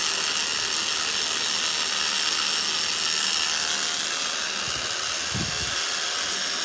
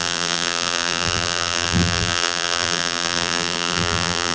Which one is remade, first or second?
second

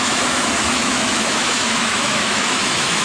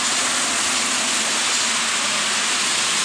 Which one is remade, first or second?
first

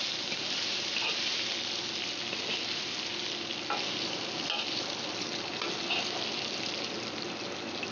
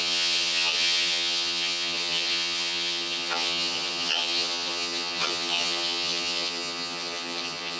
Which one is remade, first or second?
second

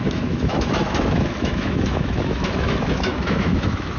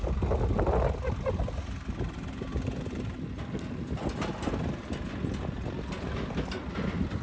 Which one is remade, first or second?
first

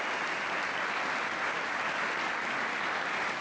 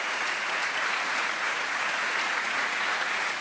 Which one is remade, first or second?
second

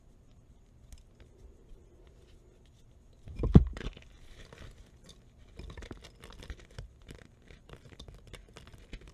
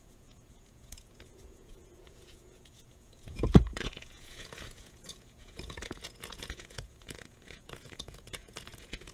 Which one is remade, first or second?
second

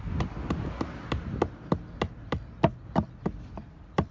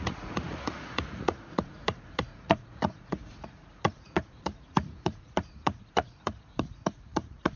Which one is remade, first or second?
second